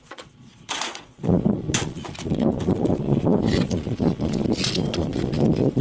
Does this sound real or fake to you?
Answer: fake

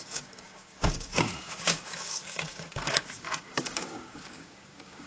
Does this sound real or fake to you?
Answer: fake